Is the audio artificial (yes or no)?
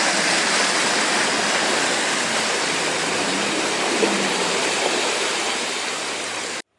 no